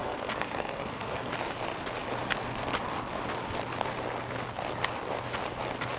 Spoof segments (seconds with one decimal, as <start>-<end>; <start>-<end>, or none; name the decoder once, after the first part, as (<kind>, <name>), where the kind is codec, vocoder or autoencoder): 0.0-1.3 (codec, SNAC)